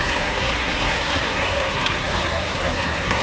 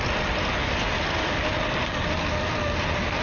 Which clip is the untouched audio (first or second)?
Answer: second